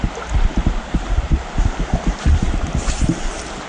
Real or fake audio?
real